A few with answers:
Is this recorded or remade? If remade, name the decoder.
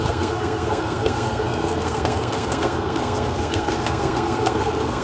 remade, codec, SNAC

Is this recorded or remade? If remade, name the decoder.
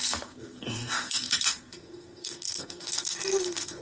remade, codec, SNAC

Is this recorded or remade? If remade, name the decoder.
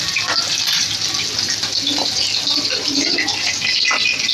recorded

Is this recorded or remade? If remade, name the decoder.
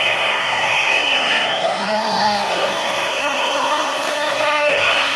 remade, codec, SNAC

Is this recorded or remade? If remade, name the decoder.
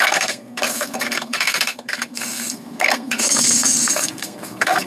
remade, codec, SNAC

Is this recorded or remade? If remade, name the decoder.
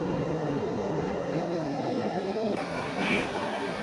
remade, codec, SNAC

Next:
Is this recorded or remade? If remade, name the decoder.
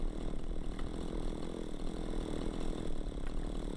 recorded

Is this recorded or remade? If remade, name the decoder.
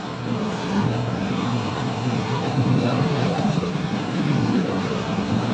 remade, codec, SNAC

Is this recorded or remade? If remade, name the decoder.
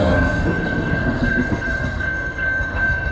remade, codec, SNAC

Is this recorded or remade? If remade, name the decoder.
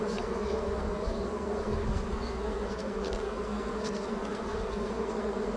remade, codec, SNAC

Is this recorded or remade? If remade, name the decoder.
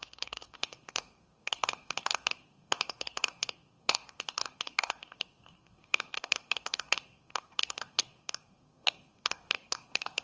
remade, codec, SNAC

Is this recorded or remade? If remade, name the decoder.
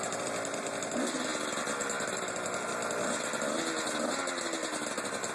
recorded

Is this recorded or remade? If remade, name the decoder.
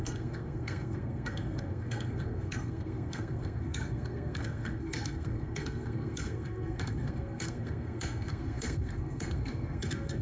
remade, codec, SNAC